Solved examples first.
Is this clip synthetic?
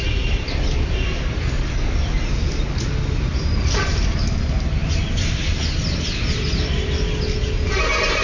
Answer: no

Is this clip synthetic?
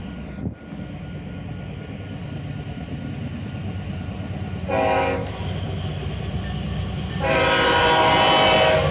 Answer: no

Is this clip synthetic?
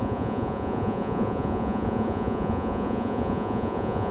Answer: yes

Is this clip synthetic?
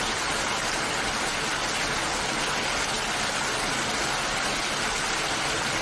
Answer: no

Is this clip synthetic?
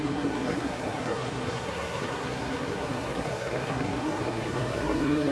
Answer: yes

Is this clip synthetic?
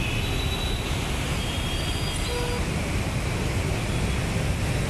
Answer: no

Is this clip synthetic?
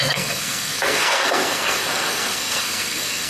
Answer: yes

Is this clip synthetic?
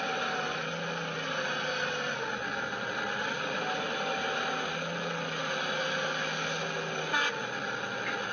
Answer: no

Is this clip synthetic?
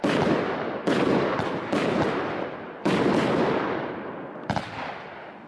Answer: no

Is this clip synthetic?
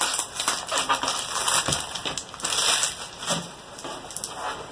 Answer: no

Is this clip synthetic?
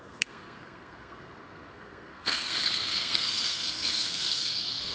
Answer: yes